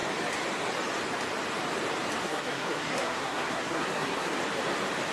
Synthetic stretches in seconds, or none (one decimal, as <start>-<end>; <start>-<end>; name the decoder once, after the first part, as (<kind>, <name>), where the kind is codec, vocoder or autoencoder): 2.2-4.4 (codec, SNAC)